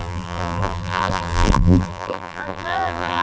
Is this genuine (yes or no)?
no